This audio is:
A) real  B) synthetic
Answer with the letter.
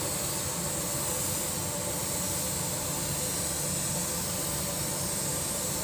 A